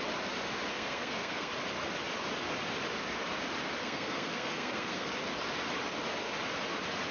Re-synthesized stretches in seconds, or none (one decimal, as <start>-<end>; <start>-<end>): 0.7-1.5; 3.8-5.1